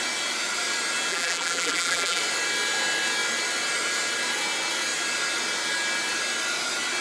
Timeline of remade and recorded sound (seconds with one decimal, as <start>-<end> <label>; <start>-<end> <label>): 0.0-1.1 recorded; 1.1-2.2 remade; 2.2-7.0 recorded

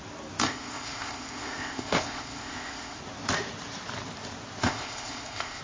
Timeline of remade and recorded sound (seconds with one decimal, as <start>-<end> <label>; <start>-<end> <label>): 0.0-0.4 recorded; 0.4-3.0 remade; 3.0-4.6 recorded; 4.6-5.6 remade

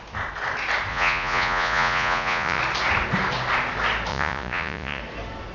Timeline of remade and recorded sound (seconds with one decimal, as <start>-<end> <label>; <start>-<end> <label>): 0.0-0.9 recorded; 0.9-2.6 remade; 2.6-4.1 recorded; 4.1-5.0 remade; 5.0-5.5 recorded

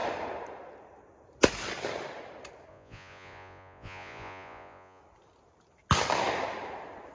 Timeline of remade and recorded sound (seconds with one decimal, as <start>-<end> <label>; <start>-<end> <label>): 0.0-2.7 recorded; 2.7-5.0 remade; 5.0-7.1 recorded